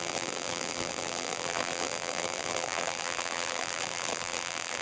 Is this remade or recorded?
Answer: remade